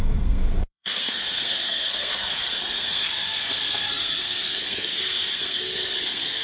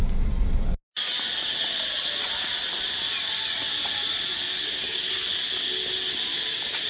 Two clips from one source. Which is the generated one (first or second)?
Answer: first